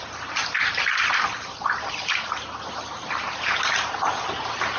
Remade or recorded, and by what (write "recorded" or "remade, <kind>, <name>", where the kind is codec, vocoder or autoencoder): recorded